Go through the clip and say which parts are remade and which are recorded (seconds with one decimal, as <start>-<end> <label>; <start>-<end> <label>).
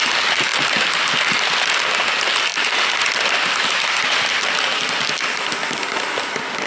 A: 0.0-2.5 recorded; 2.5-4.4 remade; 4.4-6.7 recorded